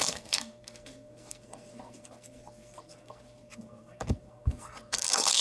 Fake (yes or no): yes